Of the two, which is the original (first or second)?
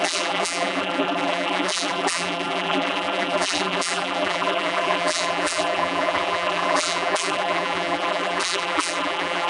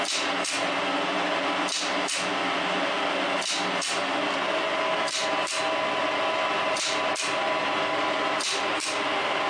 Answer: second